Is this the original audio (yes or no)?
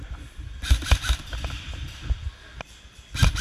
no